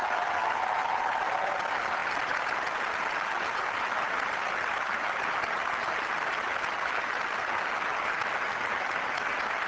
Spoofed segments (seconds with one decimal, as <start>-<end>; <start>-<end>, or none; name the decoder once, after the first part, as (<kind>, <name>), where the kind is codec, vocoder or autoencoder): none